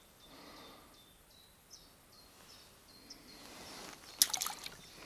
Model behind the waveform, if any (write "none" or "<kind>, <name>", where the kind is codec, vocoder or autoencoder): none